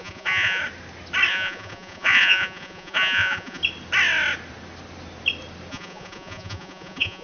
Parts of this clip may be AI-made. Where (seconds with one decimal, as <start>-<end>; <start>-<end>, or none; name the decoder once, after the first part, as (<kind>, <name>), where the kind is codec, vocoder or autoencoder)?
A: 0.0-0.6 (vocoder, Vocos); 1.3-3.6; 5.7-7.2